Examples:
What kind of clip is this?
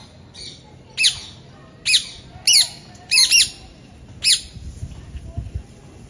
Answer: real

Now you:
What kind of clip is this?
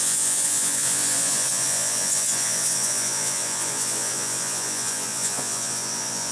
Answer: fake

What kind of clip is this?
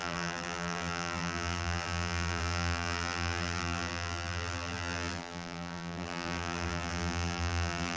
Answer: fake